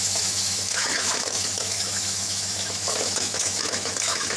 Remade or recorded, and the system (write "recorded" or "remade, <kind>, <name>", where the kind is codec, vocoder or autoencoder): remade, autoencoder, DAC-VAE